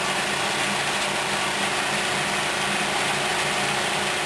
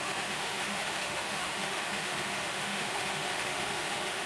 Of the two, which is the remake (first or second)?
second